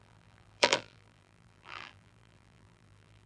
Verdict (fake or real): fake